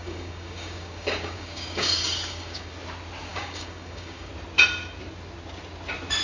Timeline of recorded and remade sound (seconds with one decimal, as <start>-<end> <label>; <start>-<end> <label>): 0.0-2.7 remade; 2.7-3.3 recorded; 3.3-4.3 remade; 4.3-6.2 recorded